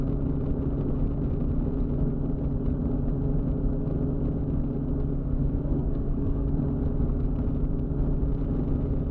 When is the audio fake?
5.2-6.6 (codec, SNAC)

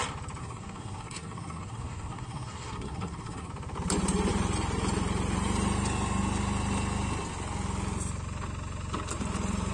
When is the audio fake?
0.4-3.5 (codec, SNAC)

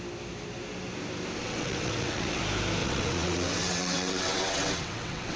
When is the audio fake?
1.4-2.4 (vocoder, WaveNeXt); 2.8-5.4

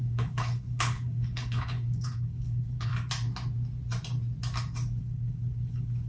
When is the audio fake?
0.0-2.9 (codec, HILCodec); 5.0-6.1